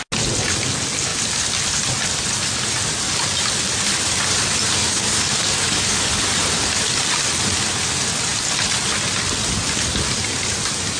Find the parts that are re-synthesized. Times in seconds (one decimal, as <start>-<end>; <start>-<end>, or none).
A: 4.8-6.1